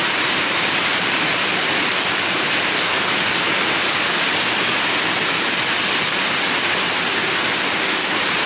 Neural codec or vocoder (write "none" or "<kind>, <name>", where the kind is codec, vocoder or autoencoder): none